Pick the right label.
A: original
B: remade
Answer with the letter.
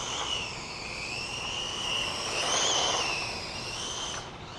A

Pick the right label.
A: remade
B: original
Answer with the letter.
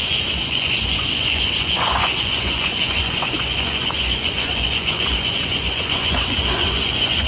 A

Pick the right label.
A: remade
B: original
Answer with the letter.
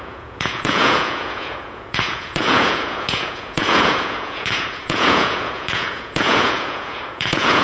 A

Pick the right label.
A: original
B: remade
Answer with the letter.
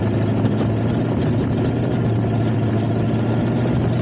A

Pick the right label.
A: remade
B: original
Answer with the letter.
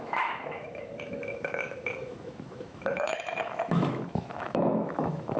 A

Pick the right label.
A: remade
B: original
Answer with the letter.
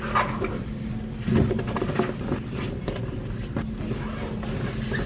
B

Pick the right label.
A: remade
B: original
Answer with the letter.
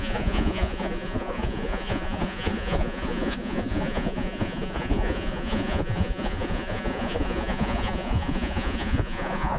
A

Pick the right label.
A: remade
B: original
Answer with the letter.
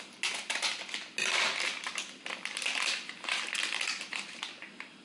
B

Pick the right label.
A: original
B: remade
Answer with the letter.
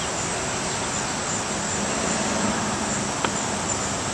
A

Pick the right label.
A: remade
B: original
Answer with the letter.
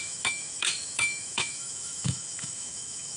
A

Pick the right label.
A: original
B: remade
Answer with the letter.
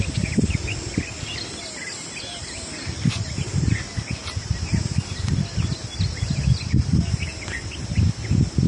A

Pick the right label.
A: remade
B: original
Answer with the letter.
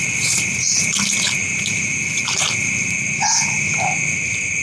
A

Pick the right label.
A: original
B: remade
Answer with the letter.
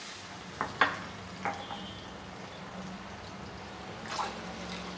A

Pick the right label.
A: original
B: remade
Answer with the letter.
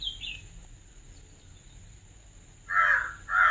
A